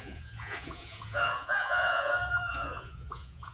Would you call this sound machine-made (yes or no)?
yes